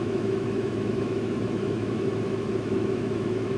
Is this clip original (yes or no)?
no